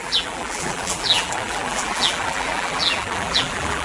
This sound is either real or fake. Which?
fake